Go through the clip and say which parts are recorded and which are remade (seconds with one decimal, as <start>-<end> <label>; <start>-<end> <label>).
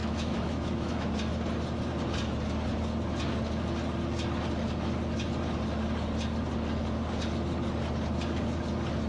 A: 0.0-1.1 remade; 1.1-9.1 recorded